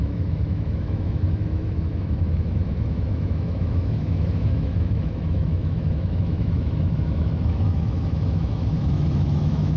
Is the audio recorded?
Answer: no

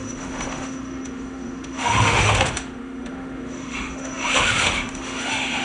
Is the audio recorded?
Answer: no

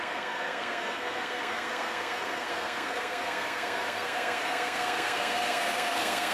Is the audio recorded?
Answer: no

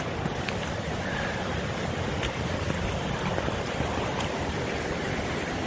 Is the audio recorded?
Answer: yes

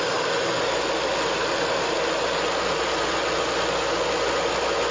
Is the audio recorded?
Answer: yes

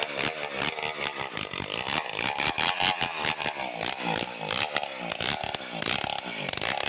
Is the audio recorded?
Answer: yes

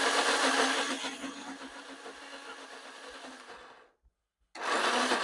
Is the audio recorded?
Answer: yes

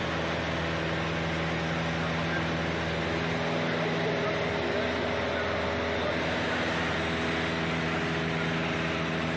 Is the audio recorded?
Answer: yes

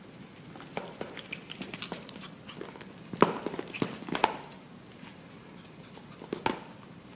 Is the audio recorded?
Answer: yes